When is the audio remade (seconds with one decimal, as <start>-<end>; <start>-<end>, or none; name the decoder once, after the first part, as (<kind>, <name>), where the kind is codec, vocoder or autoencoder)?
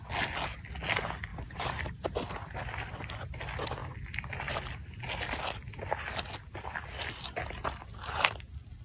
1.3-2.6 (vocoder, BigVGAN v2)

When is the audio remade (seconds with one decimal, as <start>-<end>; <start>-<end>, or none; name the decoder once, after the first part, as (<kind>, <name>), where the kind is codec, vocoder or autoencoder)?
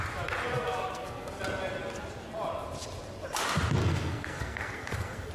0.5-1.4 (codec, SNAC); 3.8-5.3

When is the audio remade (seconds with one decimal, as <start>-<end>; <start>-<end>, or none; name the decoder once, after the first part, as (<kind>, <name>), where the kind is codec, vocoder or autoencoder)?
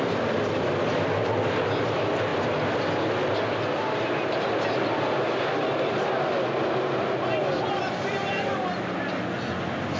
none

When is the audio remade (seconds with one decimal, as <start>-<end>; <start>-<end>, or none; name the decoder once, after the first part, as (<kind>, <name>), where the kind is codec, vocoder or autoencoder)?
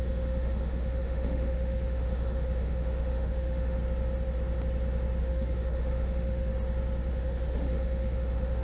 0.0-3.8 (autoencoder, DAC-VAE); 5.2-6.5; 7.1-8.6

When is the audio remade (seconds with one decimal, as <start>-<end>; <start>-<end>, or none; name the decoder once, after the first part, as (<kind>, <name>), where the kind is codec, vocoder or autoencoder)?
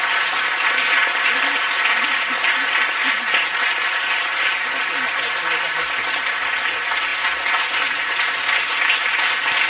none